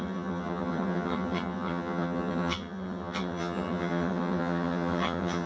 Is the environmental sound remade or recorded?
remade